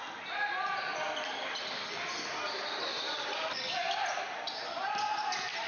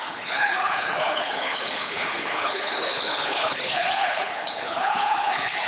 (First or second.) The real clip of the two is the first